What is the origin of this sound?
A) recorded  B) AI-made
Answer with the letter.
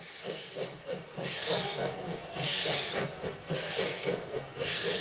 B